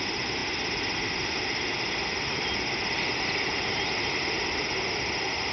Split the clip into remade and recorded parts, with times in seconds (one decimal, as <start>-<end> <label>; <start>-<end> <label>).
0.0-5.5 recorded